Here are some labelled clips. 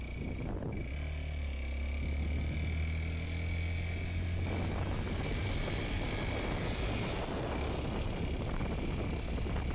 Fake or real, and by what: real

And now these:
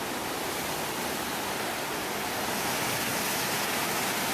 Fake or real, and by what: real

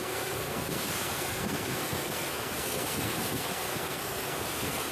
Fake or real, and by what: fake, codec, SNAC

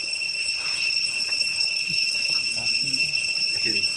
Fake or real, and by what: fake, codec, HILCodec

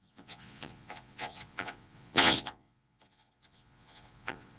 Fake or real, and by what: fake, vocoder, Vocos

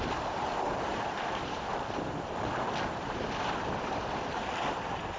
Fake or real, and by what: real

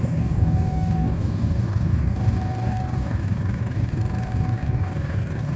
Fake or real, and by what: fake, codec, DAC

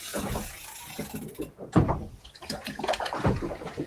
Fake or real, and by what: fake, vocoder, Vocos